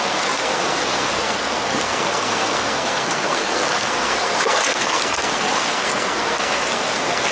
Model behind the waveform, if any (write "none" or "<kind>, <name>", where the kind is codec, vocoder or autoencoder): codec, SNAC